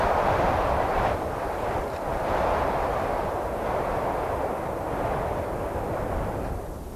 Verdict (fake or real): real